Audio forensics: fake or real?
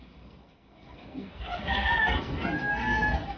fake